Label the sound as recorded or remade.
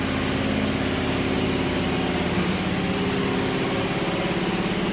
recorded